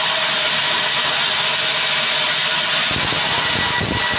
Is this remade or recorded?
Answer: recorded